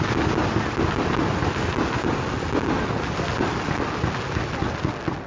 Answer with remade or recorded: recorded